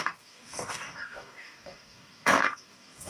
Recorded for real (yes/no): no